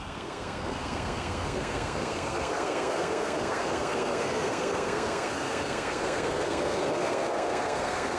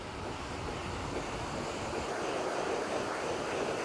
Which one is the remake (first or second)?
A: first